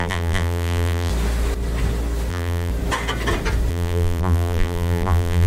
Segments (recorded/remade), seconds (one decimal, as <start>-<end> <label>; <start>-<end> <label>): 0.0-1.1 remade; 1.1-2.3 recorded; 2.3-2.7 remade; 2.7-3.7 recorded; 3.7-5.5 remade